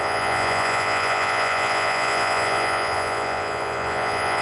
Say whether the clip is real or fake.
fake